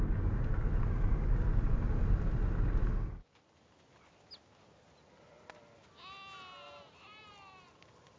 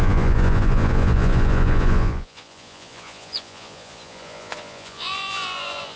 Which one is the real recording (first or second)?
first